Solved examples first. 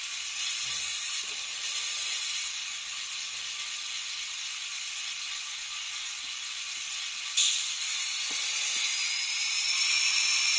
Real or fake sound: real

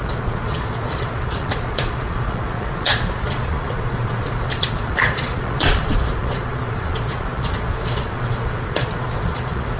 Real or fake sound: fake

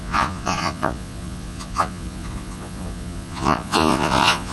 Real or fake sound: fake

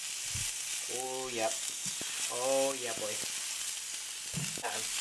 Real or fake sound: real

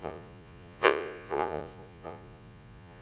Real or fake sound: fake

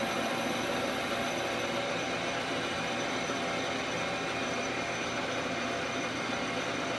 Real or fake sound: real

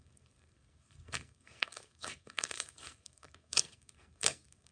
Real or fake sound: fake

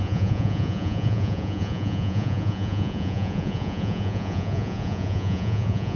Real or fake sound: fake